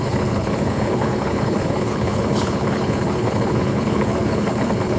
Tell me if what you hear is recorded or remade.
remade